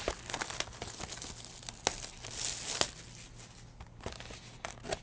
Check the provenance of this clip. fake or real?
real